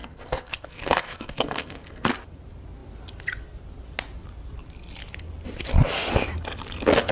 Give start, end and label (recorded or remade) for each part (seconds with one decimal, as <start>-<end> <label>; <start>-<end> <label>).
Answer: 0.0-2.1 remade; 2.1-7.1 recorded